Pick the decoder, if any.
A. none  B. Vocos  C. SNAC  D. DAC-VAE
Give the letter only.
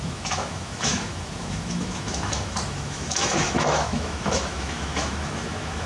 D